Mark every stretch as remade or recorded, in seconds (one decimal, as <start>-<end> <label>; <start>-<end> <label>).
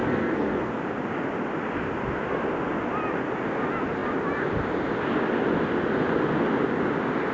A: 0.0-0.7 remade; 0.7-7.3 recorded